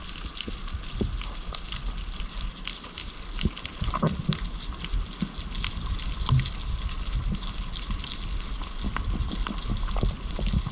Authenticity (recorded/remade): recorded